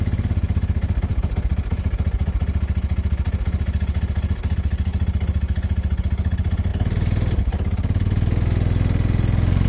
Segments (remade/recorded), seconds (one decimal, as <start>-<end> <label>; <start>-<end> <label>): 0.0-9.7 recorded